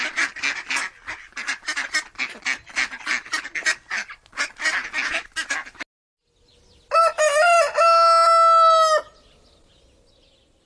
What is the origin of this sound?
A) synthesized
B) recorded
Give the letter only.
B